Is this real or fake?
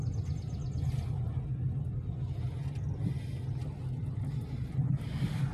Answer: real